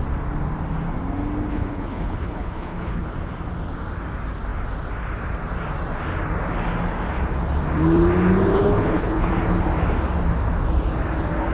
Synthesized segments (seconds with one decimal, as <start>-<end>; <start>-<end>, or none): 1.5-3.1; 8.5-9.3